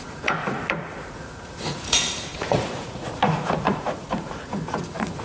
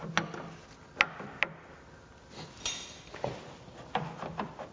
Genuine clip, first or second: second